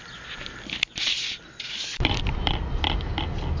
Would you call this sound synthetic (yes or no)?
no